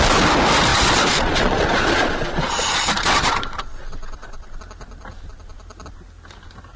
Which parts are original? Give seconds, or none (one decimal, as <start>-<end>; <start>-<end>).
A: 0.0-0.7; 4.6-6.8